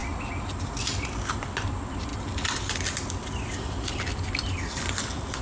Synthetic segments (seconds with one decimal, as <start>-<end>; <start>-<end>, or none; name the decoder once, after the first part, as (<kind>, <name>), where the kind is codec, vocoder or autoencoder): none